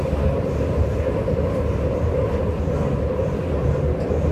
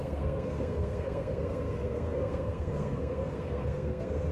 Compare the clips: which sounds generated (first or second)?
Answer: second